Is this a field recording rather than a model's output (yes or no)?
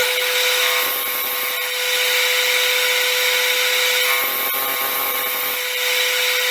yes